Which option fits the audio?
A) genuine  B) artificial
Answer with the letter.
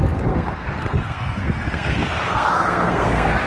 B